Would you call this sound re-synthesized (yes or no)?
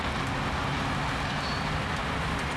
no